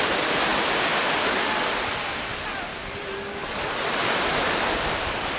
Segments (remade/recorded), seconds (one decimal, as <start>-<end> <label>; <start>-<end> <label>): 0.0-5.4 recorded